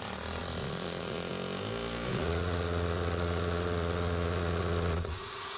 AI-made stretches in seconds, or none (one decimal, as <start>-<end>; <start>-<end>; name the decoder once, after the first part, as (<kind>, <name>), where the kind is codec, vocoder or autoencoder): 0.4-1.3 (vocoder, Vocos); 2.1-5.6